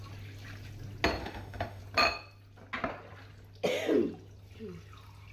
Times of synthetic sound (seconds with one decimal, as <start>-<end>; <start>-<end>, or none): 1.2-1.8